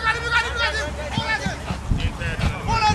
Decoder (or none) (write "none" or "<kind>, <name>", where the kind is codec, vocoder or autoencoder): none